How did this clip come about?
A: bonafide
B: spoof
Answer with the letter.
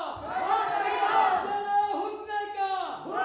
A